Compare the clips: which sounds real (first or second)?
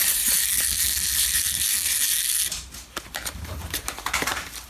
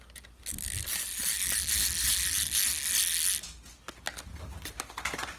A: second